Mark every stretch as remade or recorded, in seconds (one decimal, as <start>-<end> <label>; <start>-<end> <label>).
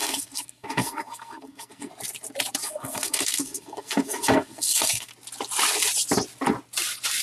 0.0-1.9 remade; 1.9-2.6 recorded; 2.6-5.1 remade; 5.1-7.2 recorded